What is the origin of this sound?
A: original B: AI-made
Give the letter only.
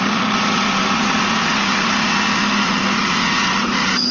A